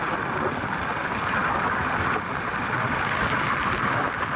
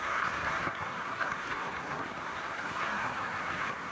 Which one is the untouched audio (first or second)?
first